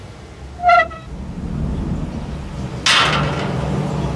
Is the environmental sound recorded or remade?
recorded